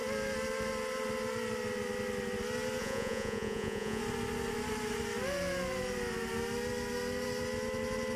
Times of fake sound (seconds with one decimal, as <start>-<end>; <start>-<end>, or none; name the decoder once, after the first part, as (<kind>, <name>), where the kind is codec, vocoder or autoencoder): 2.8-4.0 (vocoder, Vocos)